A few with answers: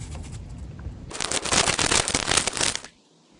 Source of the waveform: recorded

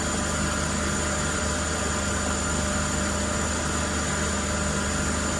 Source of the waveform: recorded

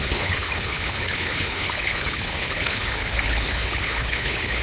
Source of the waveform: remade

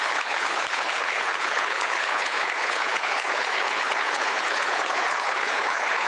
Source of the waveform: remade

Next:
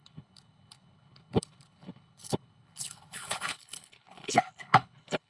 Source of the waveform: remade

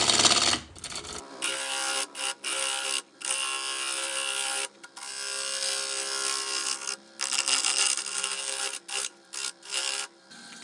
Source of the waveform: recorded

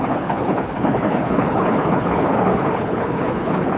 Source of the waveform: remade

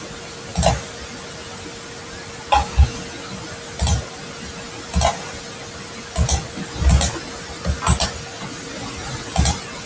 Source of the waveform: recorded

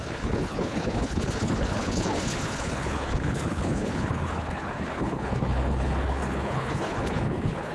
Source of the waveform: remade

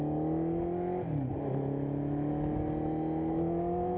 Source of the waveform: recorded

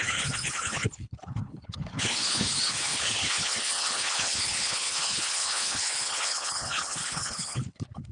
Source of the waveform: remade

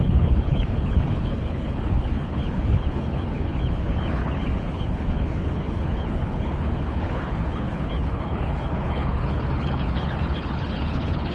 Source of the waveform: remade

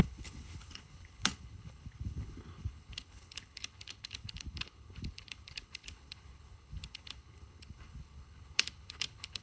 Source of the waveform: remade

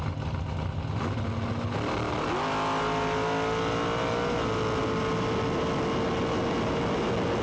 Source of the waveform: recorded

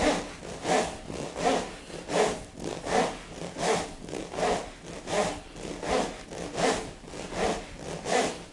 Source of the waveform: recorded